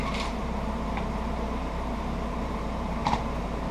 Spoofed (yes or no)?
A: yes